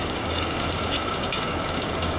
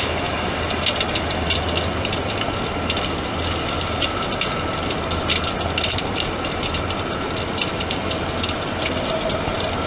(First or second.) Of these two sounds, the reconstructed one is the first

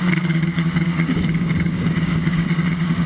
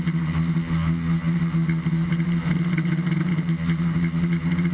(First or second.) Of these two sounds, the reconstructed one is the first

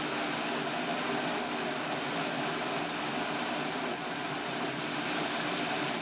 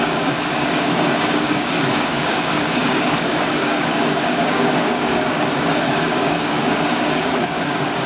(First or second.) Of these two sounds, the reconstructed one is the second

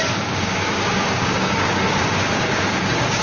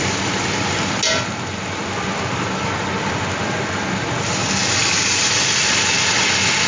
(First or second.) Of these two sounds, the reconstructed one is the first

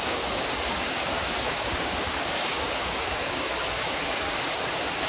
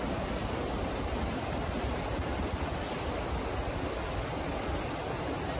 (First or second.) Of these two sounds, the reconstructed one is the first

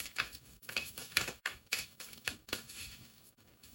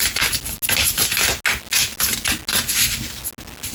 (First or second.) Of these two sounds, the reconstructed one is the first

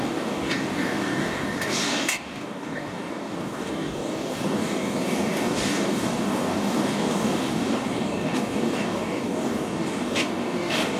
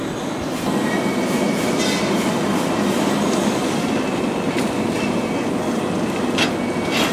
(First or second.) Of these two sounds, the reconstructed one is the first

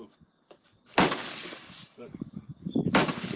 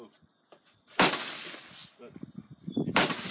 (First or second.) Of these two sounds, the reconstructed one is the first